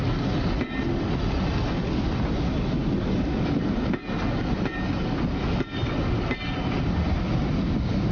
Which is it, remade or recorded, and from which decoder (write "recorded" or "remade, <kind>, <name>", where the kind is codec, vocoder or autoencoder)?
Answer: recorded